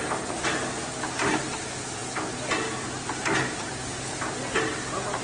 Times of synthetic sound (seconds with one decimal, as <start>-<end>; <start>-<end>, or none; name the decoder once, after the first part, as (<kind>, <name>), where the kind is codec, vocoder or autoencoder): none